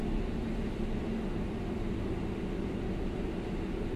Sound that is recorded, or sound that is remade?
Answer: recorded